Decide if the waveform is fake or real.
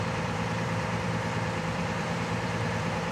fake